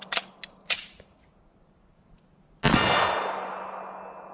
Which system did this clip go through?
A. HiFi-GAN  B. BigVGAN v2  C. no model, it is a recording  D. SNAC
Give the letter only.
C